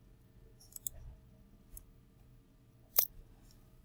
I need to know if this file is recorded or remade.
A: recorded